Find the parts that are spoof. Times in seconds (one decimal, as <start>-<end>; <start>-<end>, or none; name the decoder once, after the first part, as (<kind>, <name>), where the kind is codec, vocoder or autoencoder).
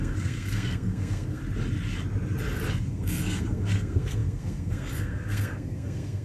0.0-1.4 (codec, SNAC); 2.7-6.2